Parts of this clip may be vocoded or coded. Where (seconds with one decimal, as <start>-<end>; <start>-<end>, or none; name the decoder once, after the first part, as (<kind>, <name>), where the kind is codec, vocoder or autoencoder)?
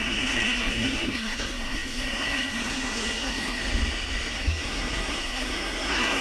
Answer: 0.0-3.6 (codec, SNAC); 4.3-6.2